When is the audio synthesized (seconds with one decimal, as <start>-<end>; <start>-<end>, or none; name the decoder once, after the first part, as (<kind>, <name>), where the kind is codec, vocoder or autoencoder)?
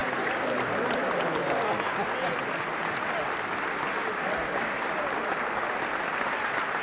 none